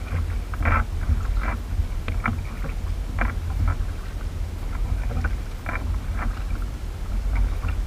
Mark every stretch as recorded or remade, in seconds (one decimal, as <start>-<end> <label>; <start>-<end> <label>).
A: 0.0-7.9 recorded